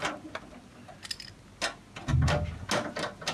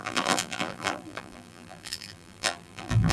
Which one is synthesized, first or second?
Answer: second